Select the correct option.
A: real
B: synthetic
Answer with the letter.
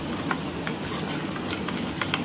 A